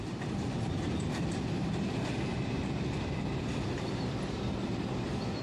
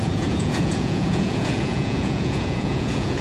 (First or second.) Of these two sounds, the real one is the first